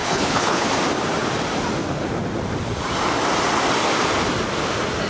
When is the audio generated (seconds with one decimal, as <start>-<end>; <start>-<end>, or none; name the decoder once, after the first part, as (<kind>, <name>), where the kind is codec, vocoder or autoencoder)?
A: 0.0-0.7 (codec, HILCodec)